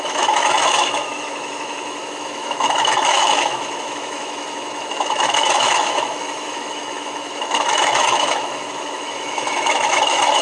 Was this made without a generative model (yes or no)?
no